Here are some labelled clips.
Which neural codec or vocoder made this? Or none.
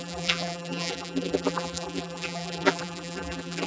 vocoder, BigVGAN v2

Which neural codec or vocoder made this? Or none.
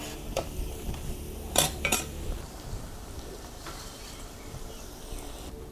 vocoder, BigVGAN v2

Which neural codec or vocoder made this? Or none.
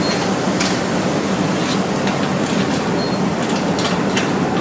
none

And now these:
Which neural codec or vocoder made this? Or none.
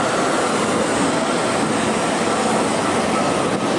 none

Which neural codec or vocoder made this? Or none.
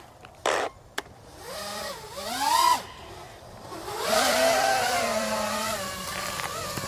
vocoder, BigVGAN v2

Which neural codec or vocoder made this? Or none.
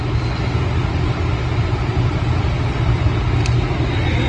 none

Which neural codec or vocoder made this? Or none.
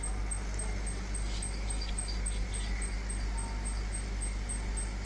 none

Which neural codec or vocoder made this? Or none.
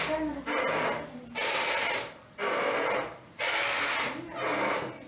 none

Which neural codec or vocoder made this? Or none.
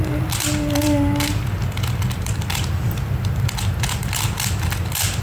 vocoder, BigVGAN v2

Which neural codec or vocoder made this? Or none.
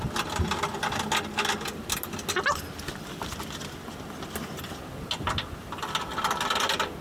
none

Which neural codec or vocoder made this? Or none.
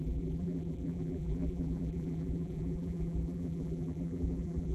vocoder, BigVGAN v2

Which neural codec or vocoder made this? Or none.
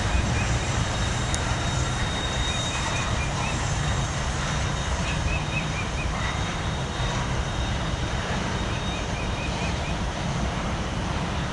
vocoder, BigVGAN v2